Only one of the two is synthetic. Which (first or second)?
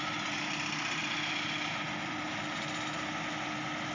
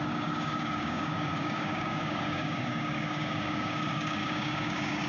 second